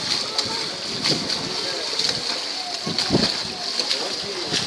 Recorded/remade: recorded